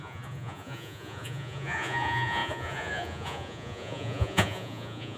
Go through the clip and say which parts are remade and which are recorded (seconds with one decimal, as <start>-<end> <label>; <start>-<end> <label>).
0.0-5.2 remade